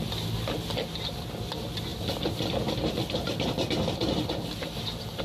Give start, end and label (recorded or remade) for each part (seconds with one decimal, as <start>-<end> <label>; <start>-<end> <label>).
0.0-5.2 recorded